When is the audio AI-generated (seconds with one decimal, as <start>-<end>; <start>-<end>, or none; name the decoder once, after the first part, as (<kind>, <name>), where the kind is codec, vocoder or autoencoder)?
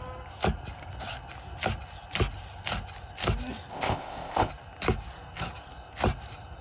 3.7-4.5 (codec, ZipCodec)